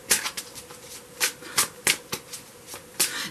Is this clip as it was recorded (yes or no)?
yes